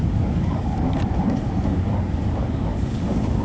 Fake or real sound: fake